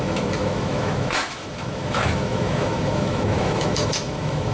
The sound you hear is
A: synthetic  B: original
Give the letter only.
A